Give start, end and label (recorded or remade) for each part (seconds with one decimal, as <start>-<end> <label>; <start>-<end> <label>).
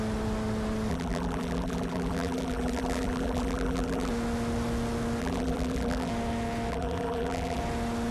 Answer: 0.0-0.9 recorded; 0.9-4.1 remade; 4.1-5.2 recorded; 5.2-6.1 remade; 6.1-6.7 recorded; 6.7-7.6 remade; 7.6-8.1 recorded